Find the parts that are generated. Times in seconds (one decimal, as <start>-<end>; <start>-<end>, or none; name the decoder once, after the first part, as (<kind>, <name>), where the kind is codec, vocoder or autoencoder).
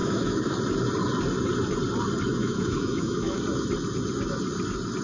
0.0-0.5 (autoencoder, DAC-VAE); 2.4-3.4